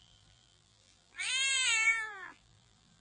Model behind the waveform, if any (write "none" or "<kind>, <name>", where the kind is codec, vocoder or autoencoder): vocoder, BigVGAN v2